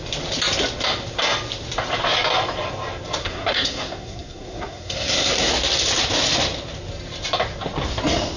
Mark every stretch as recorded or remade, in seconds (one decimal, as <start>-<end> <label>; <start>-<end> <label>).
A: 0.0-3.2 recorded; 3.2-5.5 remade; 5.5-8.4 recorded